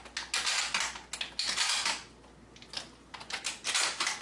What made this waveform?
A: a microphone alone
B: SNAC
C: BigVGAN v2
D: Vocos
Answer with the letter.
A